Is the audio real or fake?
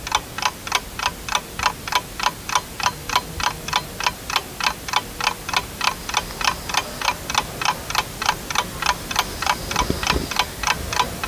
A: real